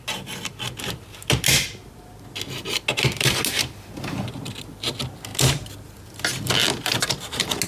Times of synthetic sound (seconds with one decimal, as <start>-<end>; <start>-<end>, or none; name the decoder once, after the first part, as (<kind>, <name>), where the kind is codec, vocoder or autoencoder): none